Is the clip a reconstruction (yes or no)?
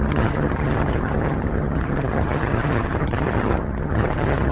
yes